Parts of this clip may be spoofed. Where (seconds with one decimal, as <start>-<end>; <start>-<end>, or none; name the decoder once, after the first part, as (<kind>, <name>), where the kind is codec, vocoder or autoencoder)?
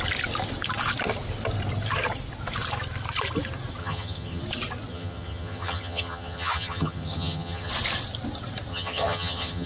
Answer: 3.8-4.4 (vocoder, HiFi-GAN); 4.9-7.7; 8.7-9.7